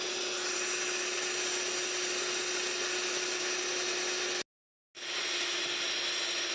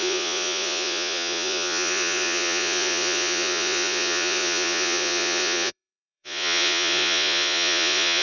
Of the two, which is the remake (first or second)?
second